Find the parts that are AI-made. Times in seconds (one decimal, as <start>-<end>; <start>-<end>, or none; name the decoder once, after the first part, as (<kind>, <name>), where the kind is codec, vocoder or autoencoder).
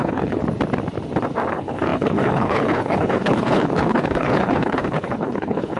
0.0-0.4 (codec, HILCodec); 1.5-5.8